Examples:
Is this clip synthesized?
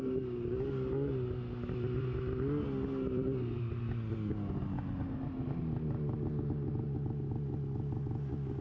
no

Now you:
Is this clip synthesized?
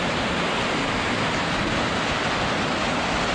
no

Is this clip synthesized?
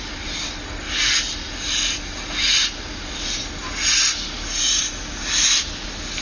no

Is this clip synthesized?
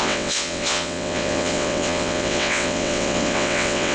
yes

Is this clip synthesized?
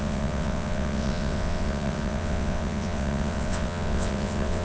yes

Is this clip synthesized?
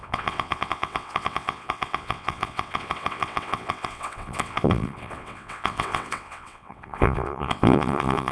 yes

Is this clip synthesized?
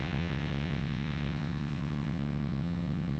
yes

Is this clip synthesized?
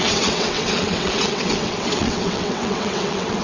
yes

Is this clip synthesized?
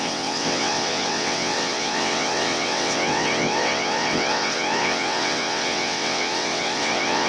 yes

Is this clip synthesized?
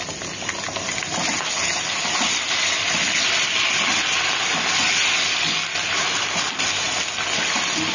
no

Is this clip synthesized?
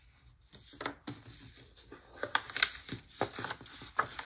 no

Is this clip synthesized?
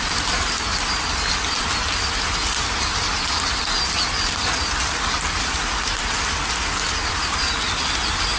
no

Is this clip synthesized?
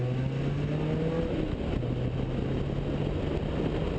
no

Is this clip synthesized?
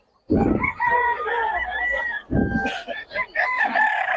no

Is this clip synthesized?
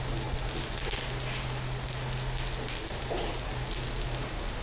no